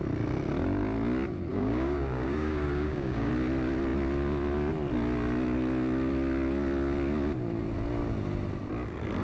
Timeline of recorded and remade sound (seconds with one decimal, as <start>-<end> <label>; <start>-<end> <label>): 0.0-1.5 recorded; 1.5-3.3 remade; 3.3-9.2 recorded

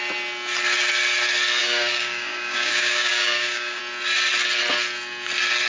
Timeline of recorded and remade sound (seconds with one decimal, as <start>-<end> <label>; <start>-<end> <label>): 0.0-1.6 recorded; 1.6-3.8 remade; 3.8-5.7 recorded

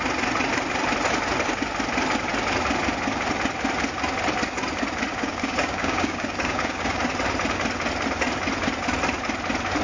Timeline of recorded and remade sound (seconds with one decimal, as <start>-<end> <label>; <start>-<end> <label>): 0.0-5.1 recorded; 5.1-7.0 remade; 7.0-9.8 recorded

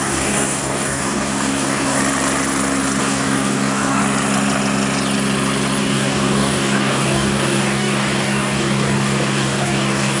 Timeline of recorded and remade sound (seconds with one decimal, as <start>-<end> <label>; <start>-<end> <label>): 0.0-2.0 remade; 2.0-3.0 recorded; 3.0-4.0 remade; 4.0-5.8 recorded; 5.8-10.2 remade

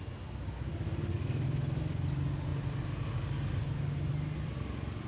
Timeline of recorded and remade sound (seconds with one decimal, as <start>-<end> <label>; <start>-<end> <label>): 0.0-0.7 recorded; 0.7-1.2 remade; 1.2-5.1 recorded

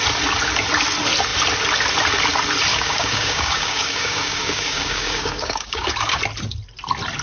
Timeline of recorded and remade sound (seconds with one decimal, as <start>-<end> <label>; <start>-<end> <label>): 0.0-2.7 recorded; 2.7-6.2 remade; 6.2-7.2 recorded

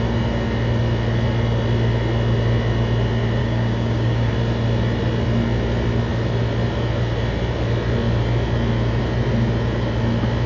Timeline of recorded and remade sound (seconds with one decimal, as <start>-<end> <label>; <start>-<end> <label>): 0.0-3.4 recorded; 3.4-4.3 remade; 4.3-10.5 recorded

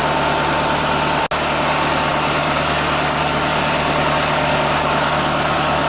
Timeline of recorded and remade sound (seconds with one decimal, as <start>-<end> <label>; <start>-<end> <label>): 0.0-2.1 recorded; 2.1-5.9 remade